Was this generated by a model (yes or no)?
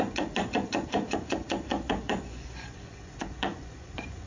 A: yes